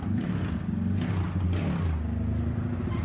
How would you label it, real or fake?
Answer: real